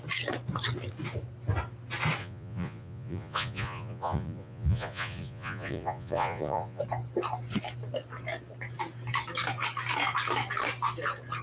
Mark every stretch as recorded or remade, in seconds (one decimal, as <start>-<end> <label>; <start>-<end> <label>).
0.0-2.2 recorded; 2.2-6.8 remade; 6.8-11.4 recorded